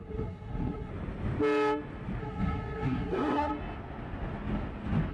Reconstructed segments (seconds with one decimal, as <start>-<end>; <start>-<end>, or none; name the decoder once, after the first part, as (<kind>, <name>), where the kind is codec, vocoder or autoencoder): 0.0-0.9 (codec, SNAC); 2.2-3.5